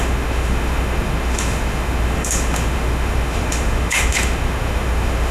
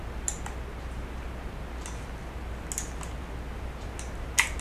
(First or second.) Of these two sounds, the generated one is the first